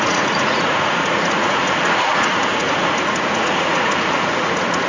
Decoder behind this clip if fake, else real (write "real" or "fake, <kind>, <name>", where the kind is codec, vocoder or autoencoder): fake, vocoder, Vocos